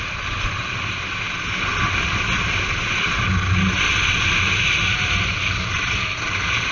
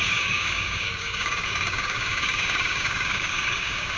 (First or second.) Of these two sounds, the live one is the first